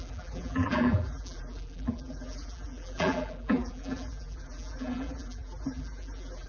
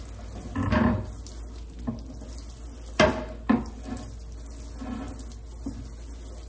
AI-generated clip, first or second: first